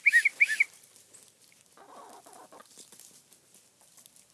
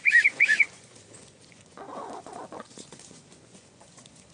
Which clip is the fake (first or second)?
second